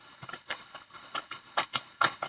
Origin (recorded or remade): remade